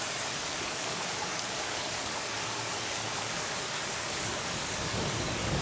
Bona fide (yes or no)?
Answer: no